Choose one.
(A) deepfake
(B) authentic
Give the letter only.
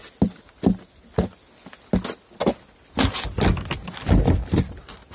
B